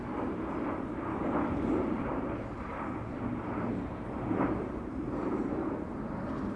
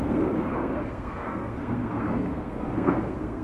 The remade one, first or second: second